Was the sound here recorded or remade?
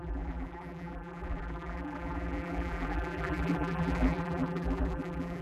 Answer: remade